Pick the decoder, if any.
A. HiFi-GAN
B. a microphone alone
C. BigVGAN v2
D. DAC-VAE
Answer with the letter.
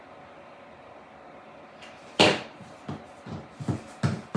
B